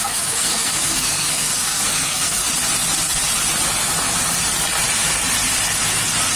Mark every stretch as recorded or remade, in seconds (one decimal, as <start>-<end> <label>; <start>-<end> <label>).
0.0-2.4 remade; 2.4-6.4 recorded